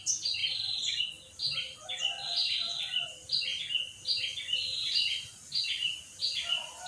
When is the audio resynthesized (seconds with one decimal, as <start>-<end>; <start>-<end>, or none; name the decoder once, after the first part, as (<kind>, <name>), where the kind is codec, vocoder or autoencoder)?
none